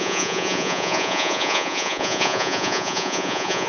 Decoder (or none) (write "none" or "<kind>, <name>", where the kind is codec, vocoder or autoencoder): vocoder, Vocos